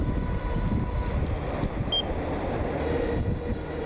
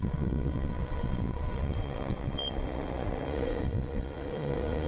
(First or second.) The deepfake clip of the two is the second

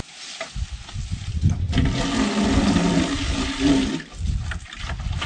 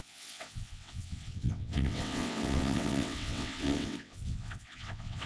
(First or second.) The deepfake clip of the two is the second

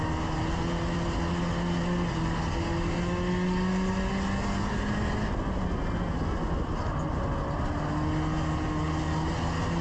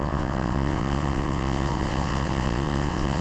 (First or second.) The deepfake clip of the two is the second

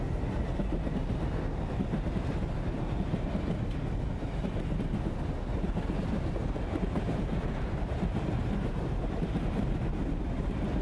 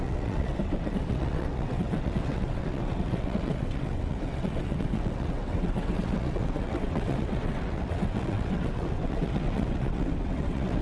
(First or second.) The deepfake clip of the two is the second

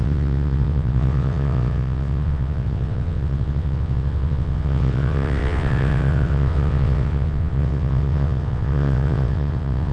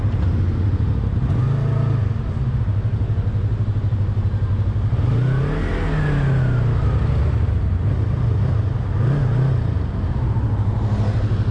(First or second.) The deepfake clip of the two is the first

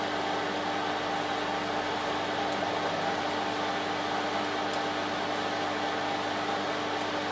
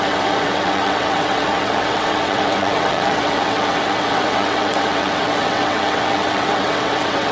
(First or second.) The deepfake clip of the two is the second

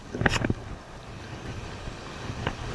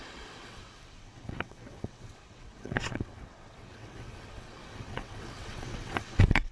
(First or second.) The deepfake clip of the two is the second